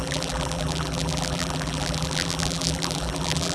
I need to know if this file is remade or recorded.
remade